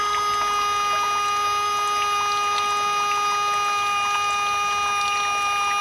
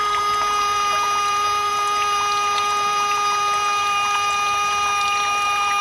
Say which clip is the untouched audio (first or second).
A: first